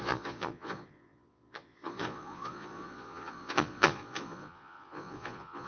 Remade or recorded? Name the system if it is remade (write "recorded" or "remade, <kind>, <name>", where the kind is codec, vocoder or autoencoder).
remade, vocoder, Vocos